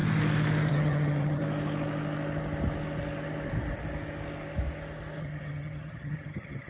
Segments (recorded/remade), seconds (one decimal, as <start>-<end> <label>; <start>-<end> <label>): 0.0-0.7 recorded; 0.7-1.4 remade; 1.4-5.2 recorded; 5.2-6.7 remade